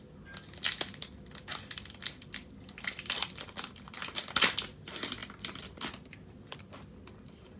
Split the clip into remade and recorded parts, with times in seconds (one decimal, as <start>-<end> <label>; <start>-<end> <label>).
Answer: 0.0-7.6 recorded